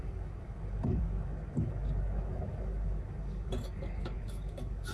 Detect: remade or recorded remade